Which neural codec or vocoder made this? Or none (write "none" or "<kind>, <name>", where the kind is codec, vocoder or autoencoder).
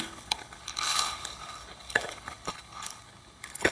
codec, HILCodec